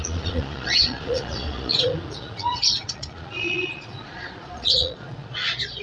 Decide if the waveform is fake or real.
fake